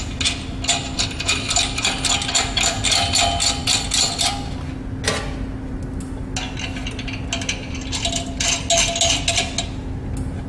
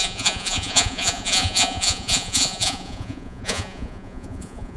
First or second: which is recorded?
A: first